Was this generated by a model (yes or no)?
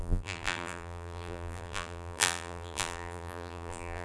yes